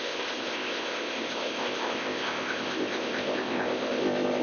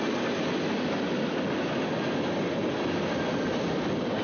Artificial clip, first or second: first